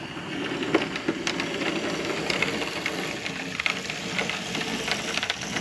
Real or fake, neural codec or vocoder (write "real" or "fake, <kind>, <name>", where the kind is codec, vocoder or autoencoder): real